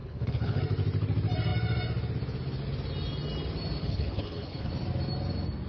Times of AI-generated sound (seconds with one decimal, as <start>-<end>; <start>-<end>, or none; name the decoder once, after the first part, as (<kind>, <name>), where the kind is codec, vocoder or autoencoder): 0.0-0.6 (codec, HILCodec); 3.8-4.7